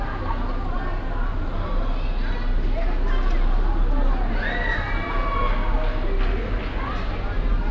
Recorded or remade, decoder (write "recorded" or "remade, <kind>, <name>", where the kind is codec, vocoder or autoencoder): recorded